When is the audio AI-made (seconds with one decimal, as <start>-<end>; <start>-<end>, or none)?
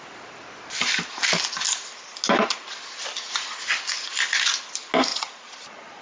5.1-6.0